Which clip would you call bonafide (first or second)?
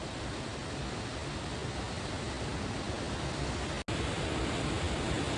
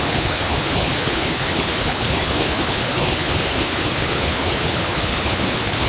first